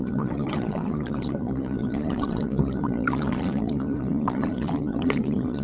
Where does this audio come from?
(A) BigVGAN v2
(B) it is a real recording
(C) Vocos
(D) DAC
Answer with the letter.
C